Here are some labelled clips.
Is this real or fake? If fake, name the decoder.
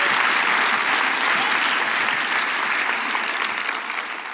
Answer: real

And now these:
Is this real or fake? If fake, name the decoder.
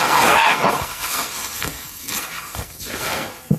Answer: fake, codec, SNAC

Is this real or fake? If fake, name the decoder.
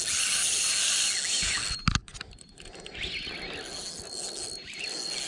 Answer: real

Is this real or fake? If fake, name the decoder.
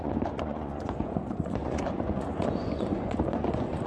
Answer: fake, vocoder, Vocos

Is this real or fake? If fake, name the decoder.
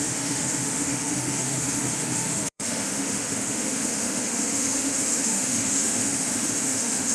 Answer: fake, autoencoder, DAC-VAE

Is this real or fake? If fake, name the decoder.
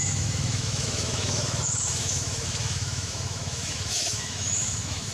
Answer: fake, autoencoder, DAC-VAE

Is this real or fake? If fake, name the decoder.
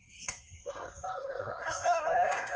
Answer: fake, codec, SNAC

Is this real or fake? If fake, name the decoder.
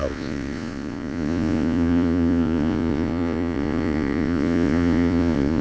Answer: fake, vocoder, Vocos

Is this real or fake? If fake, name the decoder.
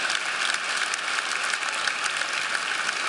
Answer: real